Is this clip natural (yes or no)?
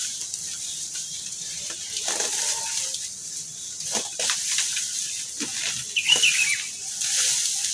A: yes